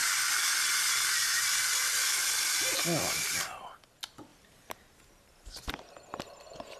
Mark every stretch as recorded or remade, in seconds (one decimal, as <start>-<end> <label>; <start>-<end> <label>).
0.0-0.5 remade; 0.5-1.2 recorded; 1.2-3.7 remade; 3.7-4.3 recorded; 4.3-5.7 remade; 5.7-6.8 recorded